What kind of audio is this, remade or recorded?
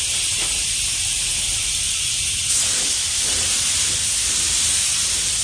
recorded